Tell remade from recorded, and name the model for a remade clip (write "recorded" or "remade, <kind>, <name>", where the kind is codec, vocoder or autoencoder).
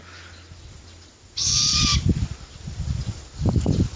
recorded